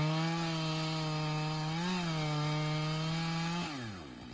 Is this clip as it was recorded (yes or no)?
yes